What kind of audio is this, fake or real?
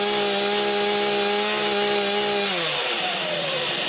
real